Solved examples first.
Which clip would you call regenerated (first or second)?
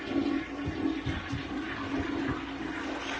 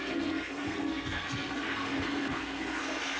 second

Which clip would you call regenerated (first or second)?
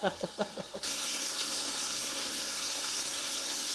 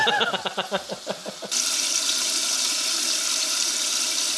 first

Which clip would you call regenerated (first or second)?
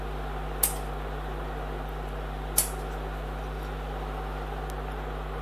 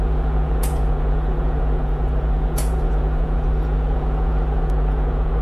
second